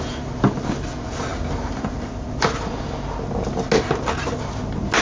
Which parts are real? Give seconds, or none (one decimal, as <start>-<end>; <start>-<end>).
0.0-5.0